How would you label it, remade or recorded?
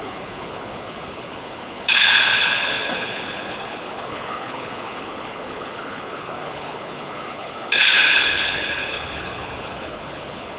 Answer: remade